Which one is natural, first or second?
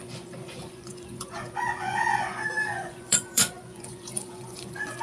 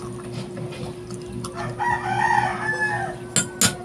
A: second